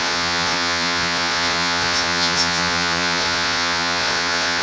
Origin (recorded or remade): remade